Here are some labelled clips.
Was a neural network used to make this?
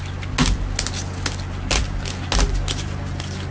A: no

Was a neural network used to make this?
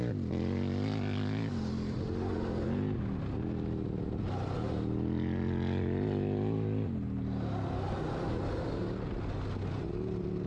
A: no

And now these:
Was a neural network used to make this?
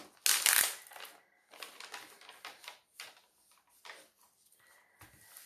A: no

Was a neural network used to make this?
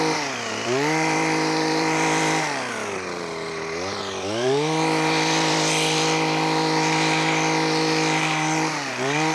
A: yes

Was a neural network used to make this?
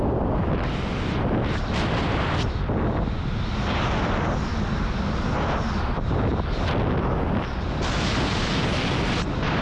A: no